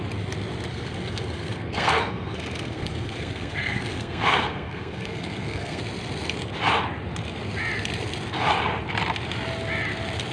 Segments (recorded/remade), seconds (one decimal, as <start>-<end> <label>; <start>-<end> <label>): 0.0-0.7 recorded; 0.7-5.8 remade; 5.8-10.3 recorded

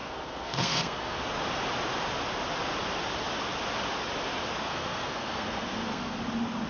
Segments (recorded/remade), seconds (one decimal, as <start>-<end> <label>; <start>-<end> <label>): 0.0-1.2 remade; 1.2-4.7 recorded; 4.7-6.2 remade; 6.2-6.7 recorded